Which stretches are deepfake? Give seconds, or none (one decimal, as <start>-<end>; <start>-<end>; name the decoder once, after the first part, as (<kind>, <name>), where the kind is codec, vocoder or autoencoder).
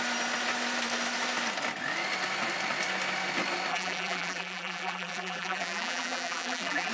3.7-6.9 (vocoder, BigVGAN v2)